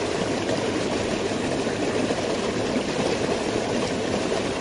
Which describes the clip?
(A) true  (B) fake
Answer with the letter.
A